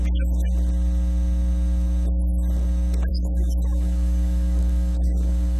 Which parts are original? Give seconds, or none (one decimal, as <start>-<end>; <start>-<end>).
0.0-3.1